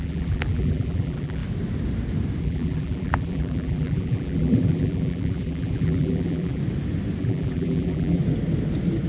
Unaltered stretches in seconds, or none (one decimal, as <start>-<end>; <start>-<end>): 1.4-2.4; 6.6-7.2; 8.2-9.1